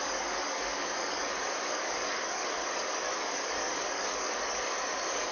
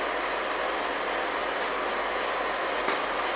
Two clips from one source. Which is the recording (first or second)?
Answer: second